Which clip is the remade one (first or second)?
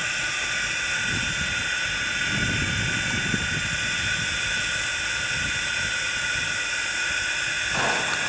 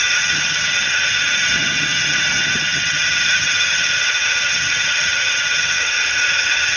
second